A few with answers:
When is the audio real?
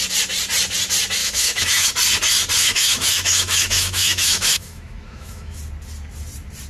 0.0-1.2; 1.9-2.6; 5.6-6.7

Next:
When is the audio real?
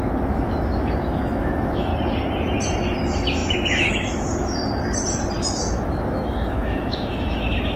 1.9-3.0; 4.6-5.4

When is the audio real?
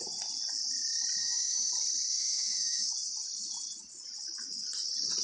0.0-1.2; 1.7-2.1; 2.9-5.2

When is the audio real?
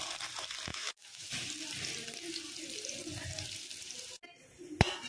0.0-0.7; 1.3-5.1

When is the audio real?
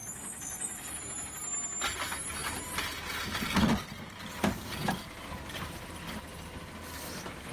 1.0-7.5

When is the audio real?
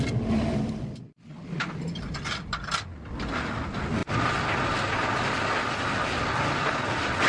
0.0-7.3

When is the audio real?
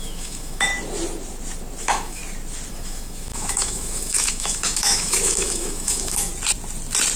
0.7-1.8; 2.2-2.7; 6.3-7.2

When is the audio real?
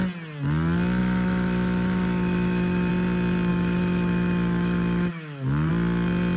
0.0-1.0; 2.9-3.5; 5.7-6.4